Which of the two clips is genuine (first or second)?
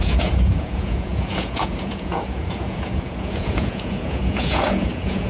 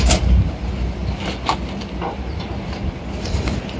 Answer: second